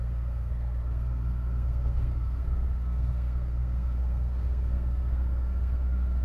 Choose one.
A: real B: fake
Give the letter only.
B